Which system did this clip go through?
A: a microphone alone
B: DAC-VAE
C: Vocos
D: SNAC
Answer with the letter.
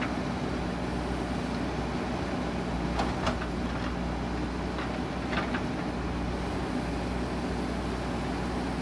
A